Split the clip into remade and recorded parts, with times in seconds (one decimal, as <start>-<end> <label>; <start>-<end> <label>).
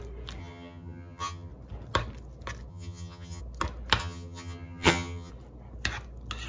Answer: 0.0-0.4 recorded; 0.4-1.5 remade; 1.5-2.7 recorded; 2.7-3.4 remade; 3.4-4.0 recorded; 4.0-5.3 remade; 5.3-6.5 recorded